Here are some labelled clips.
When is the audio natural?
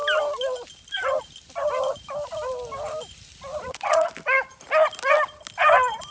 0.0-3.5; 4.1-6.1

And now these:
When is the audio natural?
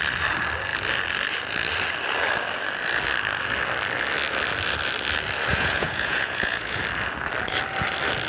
0.0-5.5; 6.8-8.3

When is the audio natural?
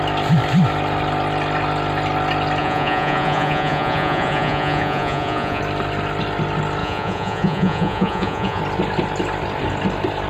0.0-2.6; 5.6-6.8; 8.6-10.3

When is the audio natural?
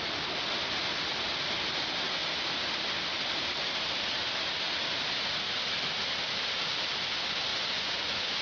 0.0-7.5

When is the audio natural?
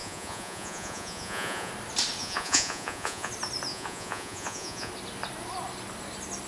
1.7-2.2; 3.3-3.7; 4.9-6.5